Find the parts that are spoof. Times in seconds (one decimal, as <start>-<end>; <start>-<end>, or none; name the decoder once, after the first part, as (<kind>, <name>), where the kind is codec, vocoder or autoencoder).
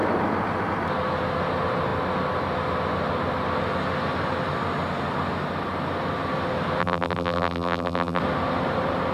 6.8-8.2 (vocoder, BigVGAN v2)